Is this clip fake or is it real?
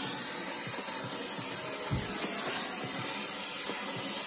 real